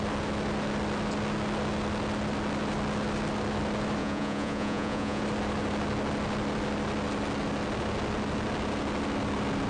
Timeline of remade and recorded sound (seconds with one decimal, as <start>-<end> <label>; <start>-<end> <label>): 0.0-4.0 recorded; 4.0-5.2 remade; 5.2-9.7 recorded